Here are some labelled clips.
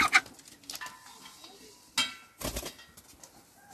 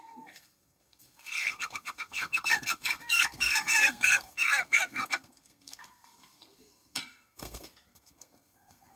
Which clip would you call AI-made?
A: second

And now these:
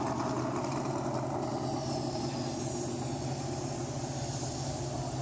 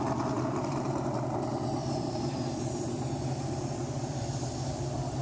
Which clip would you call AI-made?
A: second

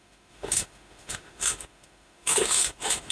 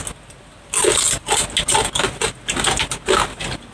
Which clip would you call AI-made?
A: first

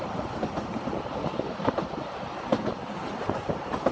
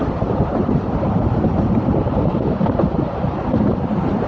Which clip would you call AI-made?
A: second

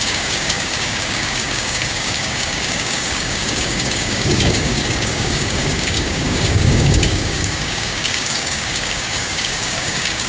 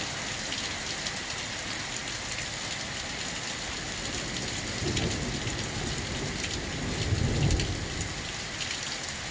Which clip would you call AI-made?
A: first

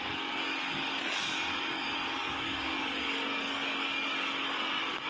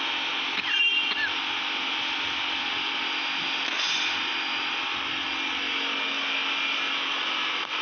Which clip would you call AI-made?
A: first